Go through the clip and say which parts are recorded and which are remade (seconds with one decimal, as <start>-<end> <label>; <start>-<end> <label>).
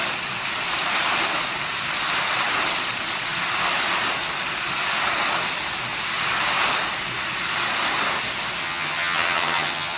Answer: 0.0-8.6 recorded; 8.6-10.0 remade